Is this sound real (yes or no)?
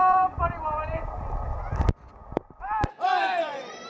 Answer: no